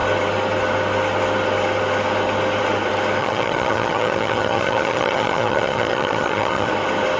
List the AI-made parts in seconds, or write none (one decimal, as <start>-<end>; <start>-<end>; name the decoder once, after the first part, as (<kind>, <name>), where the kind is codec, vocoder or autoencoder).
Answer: 3.2-6.7 (vocoder, HiFi-GAN)